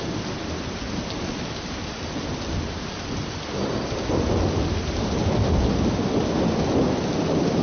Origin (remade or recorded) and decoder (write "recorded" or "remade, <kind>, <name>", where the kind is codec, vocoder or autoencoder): recorded